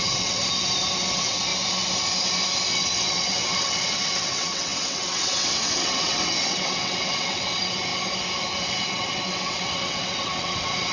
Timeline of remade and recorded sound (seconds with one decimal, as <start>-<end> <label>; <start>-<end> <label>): 0.0-0.4 remade; 0.4-1.1 recorded; 1.1-1.5 remade; 1.5-2.7 recorded; 2.7-7.9 remade; 7.9-8.5 recorded; 8.5-10.9 remade